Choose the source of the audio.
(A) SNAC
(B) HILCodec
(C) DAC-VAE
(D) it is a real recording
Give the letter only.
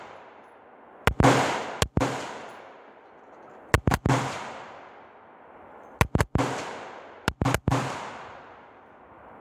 D